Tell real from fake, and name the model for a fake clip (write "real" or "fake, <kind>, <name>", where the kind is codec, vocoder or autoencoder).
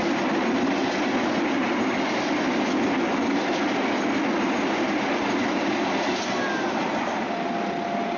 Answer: real